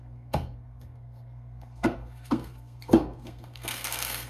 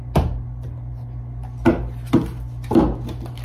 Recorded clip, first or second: second